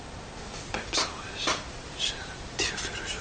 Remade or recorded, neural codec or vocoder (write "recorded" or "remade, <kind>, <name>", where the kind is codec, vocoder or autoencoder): remade, vocoder, BigVGAN v2